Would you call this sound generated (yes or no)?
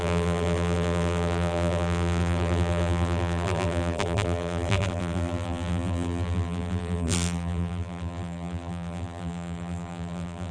yes